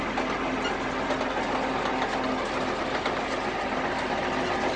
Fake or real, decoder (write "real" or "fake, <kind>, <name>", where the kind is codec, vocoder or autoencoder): real